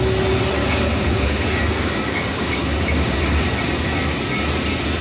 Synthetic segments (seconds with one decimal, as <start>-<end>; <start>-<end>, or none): 0.6-3.2